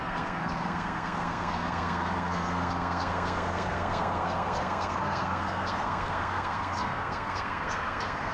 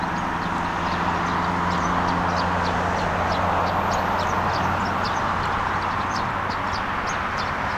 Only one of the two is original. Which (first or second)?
second